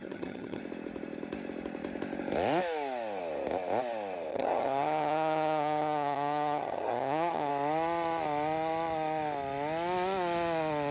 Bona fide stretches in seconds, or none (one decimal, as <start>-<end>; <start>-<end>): 0.6-4.3; 7.5-10.9